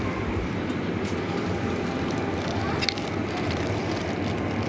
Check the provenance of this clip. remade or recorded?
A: remade